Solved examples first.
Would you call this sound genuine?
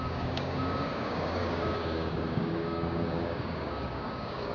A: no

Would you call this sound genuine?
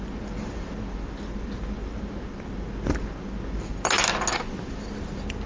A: yes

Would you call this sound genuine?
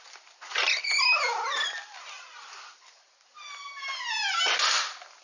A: yes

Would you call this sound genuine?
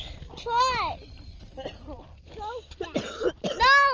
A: yes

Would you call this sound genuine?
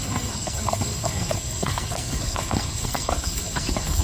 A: no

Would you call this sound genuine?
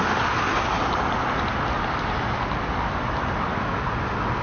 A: yes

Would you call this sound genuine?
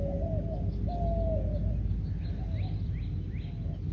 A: yes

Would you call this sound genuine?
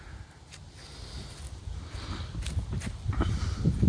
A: yes